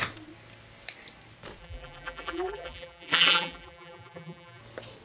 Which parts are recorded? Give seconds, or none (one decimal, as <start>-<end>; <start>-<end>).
0.0-1.6; 4.6-5.0